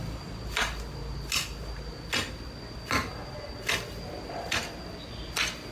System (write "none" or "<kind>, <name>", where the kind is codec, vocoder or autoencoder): none